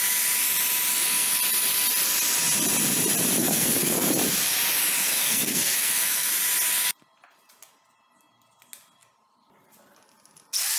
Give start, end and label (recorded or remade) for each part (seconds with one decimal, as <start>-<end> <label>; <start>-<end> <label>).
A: 0.0-0.9 recorded; 0.9-1.4 remade; 1.4-3.4 recorded; 3.4-4.1 remade; 4.1-5.0 recorded; 5.0-6.3 remade; 6.3-10.8 recorded